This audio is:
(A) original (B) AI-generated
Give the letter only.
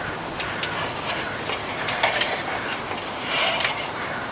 A